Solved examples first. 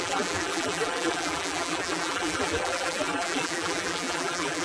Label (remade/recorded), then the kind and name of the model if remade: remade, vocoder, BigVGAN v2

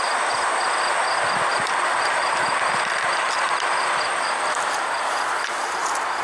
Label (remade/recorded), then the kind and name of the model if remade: recorded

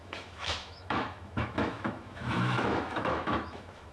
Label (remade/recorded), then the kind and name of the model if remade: remade, autoencoder, DAC-VAE